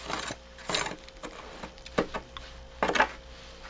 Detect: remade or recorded recorded